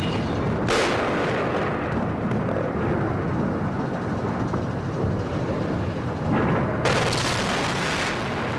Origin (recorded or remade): recorded